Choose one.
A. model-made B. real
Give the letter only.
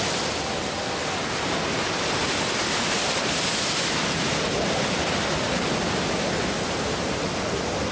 B